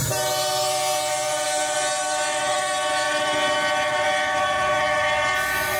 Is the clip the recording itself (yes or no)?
yes